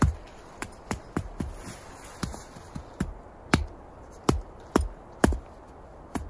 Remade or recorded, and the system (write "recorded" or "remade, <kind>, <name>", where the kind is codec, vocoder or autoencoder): recorded